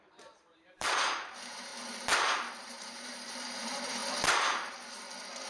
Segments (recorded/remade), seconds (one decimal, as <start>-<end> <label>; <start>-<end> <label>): 0.0-1.7 remade; 1.7-2.7 recorded; 2.7-4.0 remade; 4.0-5.5 recorded